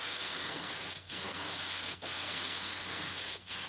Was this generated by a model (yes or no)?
yes